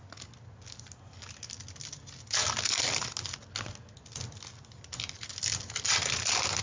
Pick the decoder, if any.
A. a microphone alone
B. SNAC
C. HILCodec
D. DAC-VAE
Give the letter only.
A